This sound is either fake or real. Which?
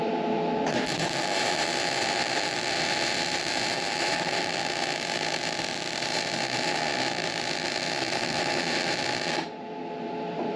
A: fake